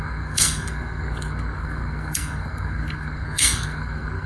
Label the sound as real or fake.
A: fake